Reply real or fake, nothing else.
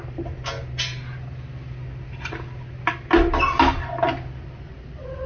real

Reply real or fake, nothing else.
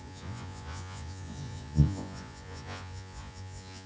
fake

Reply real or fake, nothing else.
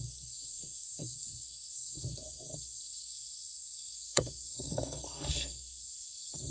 fake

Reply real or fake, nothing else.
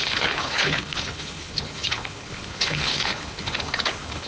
fake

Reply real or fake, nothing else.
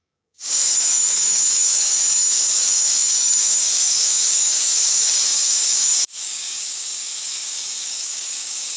fake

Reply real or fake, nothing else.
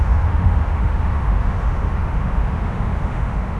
fake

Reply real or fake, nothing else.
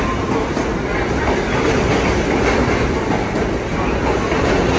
real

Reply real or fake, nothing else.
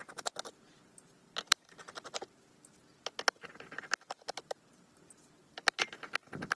real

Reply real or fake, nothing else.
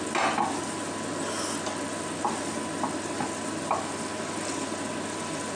real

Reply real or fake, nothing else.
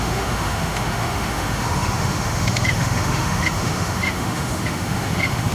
fake